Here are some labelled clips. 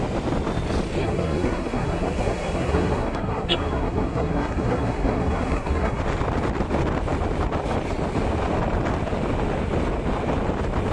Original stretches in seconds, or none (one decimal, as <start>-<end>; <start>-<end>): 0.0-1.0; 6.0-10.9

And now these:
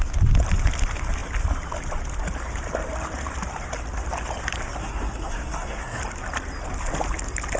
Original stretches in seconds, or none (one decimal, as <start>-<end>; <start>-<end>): 0.0-4.8; 6.0-7.6

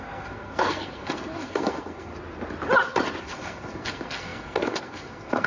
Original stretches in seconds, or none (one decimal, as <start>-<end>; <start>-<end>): 2.1-3.2

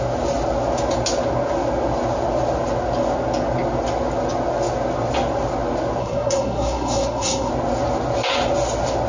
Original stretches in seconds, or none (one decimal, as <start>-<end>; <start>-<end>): 0.0-6.0; 7.5-9.1

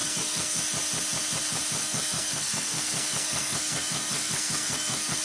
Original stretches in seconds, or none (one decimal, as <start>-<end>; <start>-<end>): 0.6-1.8

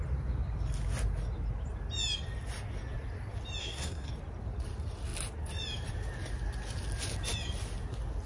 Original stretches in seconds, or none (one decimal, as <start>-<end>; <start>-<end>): 0.0-3.6; 4.1-8.3